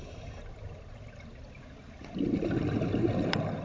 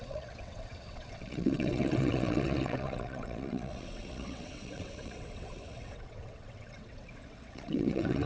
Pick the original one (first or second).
first